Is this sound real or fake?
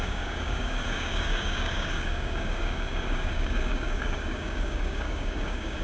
fake